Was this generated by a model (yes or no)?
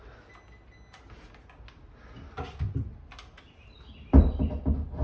no